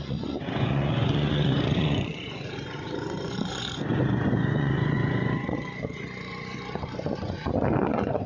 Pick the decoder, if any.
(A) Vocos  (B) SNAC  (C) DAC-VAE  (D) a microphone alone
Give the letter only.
A